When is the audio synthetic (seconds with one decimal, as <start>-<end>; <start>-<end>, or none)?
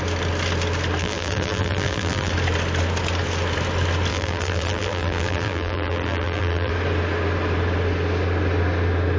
1.0-2.3; 4.1-6.7